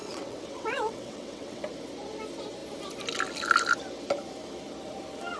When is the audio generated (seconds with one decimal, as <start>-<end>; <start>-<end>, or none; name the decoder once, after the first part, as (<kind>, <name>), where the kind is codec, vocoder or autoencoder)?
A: 0.0-1.6 (vocoder, WaveNeXt)